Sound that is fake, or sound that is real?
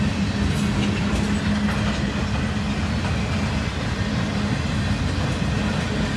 real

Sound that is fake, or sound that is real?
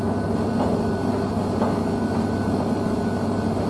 real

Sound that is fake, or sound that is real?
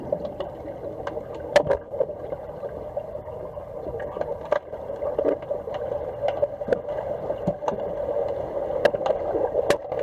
real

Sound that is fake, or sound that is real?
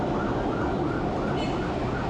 real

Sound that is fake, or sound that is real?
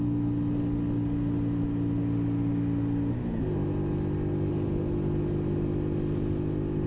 real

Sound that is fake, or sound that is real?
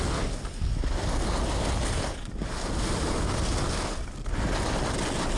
real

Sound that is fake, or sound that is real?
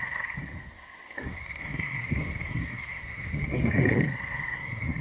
fake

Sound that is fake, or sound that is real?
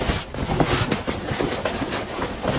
real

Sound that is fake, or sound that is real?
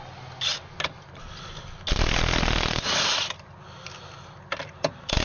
real